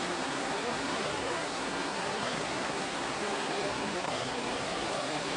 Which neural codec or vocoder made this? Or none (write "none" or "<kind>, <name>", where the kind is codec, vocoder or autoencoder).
codec, SNAC